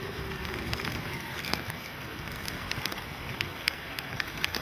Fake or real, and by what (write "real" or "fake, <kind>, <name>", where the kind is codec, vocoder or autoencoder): fake, codec, SNAC